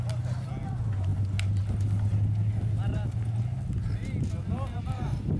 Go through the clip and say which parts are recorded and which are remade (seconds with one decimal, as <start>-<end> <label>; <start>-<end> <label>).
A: 0.0-5.4 recorded